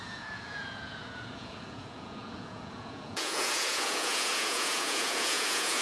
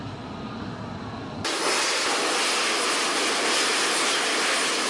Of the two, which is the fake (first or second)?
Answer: first